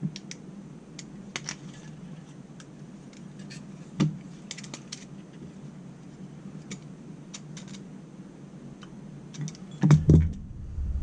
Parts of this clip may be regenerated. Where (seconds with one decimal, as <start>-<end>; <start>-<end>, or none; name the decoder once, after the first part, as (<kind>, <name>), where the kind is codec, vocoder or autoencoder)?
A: none